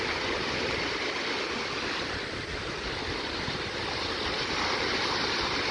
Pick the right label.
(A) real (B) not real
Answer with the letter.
A